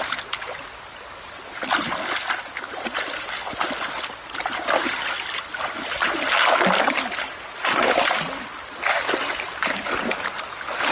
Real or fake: real